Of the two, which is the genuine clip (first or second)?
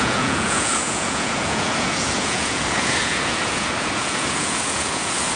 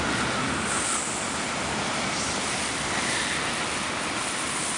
second